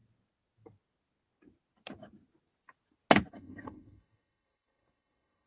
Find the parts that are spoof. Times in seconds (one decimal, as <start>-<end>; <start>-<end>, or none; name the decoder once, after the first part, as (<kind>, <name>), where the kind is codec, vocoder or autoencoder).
3.3-5.5 (codec, SNAC)